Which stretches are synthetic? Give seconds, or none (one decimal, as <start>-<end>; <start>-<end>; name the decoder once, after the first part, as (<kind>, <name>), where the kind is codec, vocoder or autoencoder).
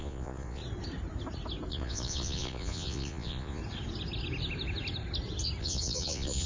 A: 0.0-0.6 (vocoder, Vocos); 1.7-3.6; 5.6-6.5